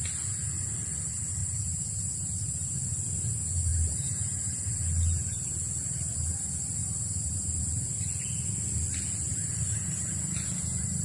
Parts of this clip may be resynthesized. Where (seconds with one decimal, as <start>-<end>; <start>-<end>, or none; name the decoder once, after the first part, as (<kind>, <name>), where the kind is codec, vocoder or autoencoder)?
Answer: 1.4-2.7 (vocoder, BigVGAN v2); 3.7-4.7; 6.8-7.6; 9.3-10.1